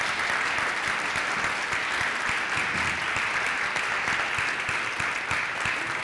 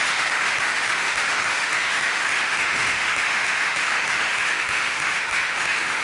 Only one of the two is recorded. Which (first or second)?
first